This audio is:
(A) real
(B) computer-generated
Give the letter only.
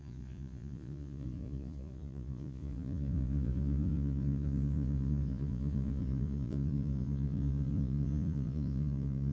B